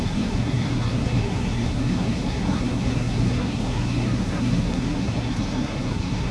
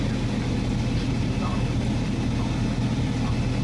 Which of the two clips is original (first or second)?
second